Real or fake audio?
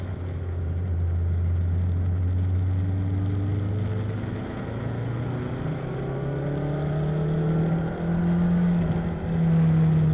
real